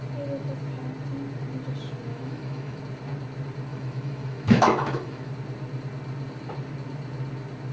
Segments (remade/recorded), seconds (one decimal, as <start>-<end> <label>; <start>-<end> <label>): 0.0-2.1 recorded; 2.1-2.8 remade; 2.8-3.7 recorded; 3.7-5.3 remade; 5.3-7.7 recorded